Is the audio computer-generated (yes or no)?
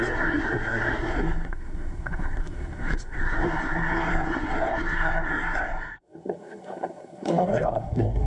yes